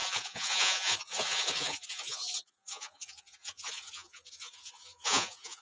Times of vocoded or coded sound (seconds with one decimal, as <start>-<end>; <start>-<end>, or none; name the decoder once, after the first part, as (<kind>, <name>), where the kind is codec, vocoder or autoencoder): 0.0-5.6 (vocoder, Vocos)